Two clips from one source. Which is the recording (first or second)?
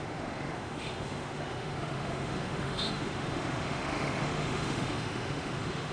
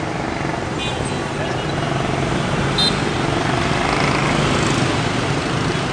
second